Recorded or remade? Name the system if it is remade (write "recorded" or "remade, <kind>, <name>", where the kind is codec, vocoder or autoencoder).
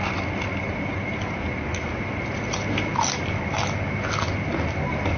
recorded